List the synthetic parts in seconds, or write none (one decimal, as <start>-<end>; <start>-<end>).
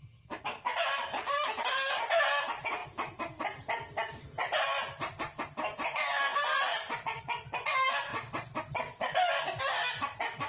none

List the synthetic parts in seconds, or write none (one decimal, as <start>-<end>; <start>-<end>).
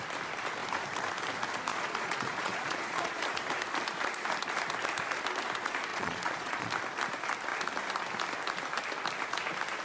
1.7-3.2; 5.9-6.7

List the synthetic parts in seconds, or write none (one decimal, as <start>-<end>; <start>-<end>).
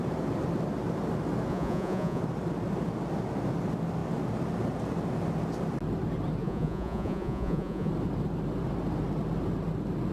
1.5-2.2; 6.4-7.9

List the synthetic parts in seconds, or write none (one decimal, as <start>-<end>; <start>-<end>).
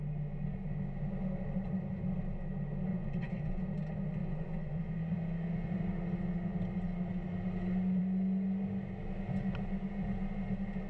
2.9-3.6; 4.2-4.8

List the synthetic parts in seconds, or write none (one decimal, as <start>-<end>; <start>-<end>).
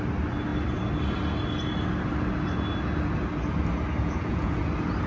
4.0-4.6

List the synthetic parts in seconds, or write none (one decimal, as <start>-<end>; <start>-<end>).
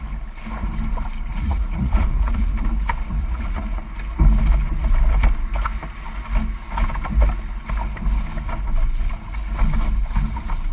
1.3-2.5; 3.2-3.8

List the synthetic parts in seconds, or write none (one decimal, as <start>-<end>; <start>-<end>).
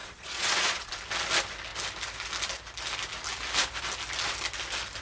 0.0-0.9